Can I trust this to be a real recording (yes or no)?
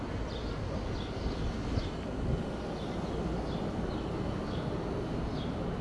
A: yes